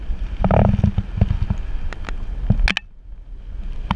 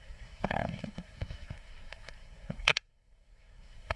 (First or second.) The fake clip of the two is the second